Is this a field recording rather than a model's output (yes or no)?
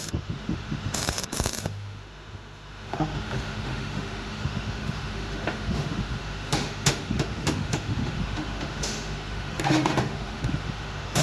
no